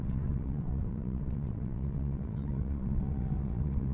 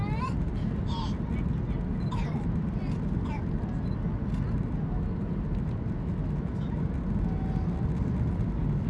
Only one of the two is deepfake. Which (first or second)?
first